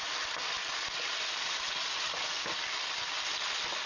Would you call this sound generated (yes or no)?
no